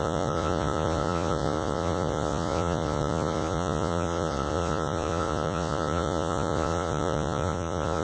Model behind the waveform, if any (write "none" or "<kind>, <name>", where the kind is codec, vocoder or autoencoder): vocoder, Vocos